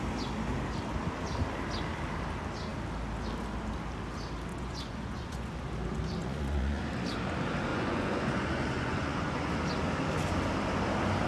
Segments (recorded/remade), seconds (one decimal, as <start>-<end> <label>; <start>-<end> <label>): 0.0-4.5 recorded; 4.5-5.6 remade; 5.6-6.2 recorded; 6.2-6.8 remade; 6.8-7.7 recorded; 7.7-9.5 remade; 9.5-11.3 recorded